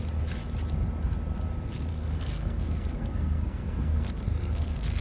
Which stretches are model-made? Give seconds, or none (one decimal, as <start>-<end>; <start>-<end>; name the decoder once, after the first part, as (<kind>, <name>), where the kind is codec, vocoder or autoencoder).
1.9-5.0 (codec, SNAC)